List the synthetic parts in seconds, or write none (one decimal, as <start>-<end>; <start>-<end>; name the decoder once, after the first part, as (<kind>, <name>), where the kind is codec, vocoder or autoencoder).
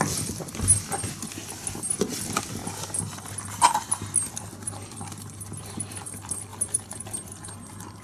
0.0-0.4 (vocoder, BigVGAN v2); 1.9-2.6; 4.3-8.0